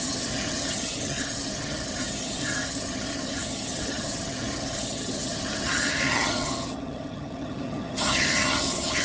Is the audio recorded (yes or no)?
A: no